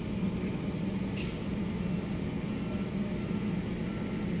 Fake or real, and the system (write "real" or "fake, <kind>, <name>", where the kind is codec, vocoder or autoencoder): real